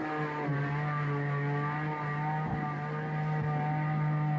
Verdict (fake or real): real